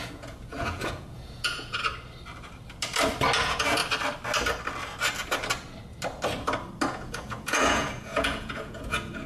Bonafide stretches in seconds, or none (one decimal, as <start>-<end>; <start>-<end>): 1.9-3.4; 3.8-6.9